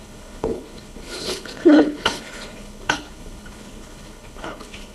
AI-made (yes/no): yes